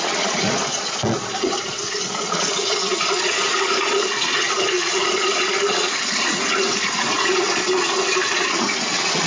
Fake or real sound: fake